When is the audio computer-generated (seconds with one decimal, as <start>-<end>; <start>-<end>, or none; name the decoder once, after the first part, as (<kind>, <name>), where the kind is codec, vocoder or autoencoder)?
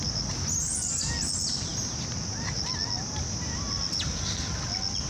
none